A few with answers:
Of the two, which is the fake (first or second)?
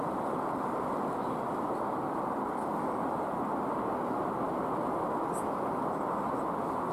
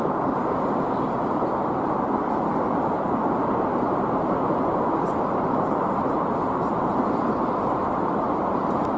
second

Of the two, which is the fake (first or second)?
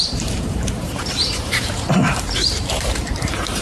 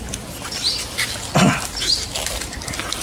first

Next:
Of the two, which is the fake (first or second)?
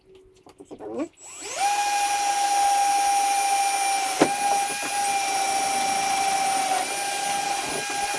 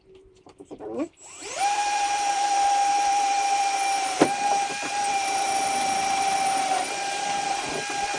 second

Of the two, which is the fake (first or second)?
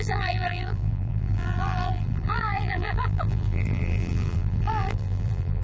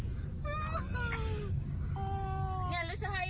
first